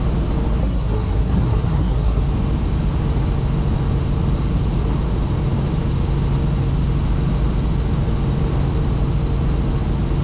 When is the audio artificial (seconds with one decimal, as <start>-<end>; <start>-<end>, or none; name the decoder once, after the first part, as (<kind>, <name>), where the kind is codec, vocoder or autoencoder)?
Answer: 0.6-2.2 (codec, SNAC)